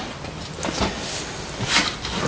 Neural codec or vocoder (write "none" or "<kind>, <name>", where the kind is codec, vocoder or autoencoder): none